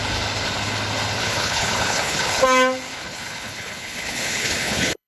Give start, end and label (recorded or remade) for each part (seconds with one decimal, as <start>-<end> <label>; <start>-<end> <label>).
0.0-1.2 recorded; 1.2-2.4 remade; 2.4-2.9 recorded; 2.9-5.1 remade